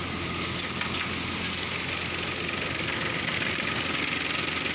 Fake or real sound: real